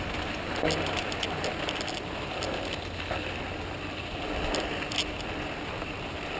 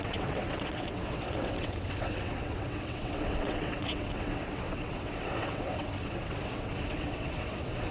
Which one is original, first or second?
first